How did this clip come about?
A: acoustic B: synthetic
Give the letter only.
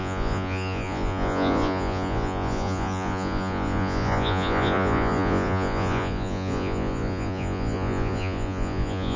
B